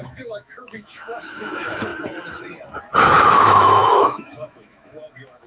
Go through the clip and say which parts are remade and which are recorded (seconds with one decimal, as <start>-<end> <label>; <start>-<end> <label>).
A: 0.0-1.9 remade; 1.9-3.2 recorded; 3.2-5.5 remade